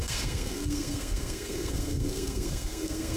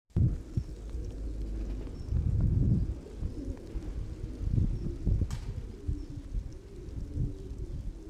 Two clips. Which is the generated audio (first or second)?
first